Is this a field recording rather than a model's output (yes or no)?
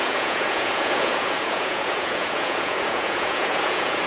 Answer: no